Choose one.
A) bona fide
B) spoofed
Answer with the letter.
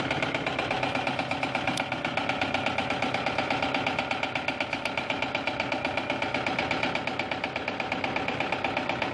A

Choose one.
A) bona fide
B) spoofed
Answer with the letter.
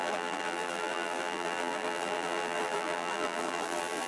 B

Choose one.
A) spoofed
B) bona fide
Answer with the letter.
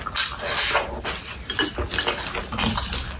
B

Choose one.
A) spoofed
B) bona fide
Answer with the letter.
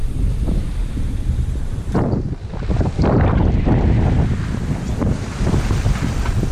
B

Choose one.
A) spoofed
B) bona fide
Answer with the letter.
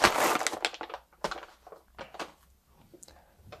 B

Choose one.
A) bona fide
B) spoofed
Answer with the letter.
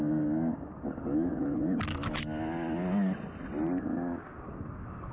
A